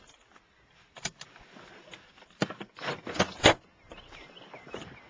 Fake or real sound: real